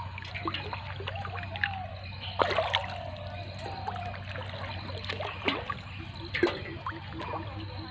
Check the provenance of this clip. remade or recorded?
recorded